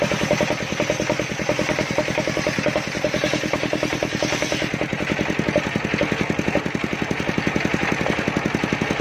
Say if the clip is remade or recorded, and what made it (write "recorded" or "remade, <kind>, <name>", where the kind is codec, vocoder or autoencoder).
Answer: recorded